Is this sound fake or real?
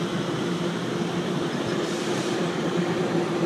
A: real